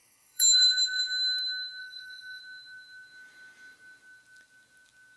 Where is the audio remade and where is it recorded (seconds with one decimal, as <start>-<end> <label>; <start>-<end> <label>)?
0.0-1.0 remade; 1.0-1.8 recorded; 1.8-2.4 remade; 2.4-5.2 recorded